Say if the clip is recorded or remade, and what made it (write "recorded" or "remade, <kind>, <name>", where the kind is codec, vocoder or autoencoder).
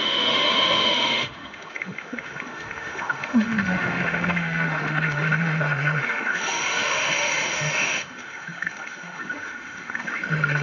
remade, autoencoder, DAC-VAE